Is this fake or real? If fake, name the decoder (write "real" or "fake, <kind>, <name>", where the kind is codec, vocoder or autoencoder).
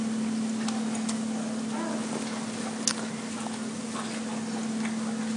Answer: real